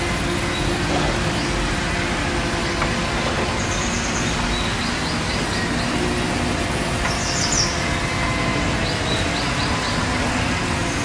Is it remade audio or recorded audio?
recorded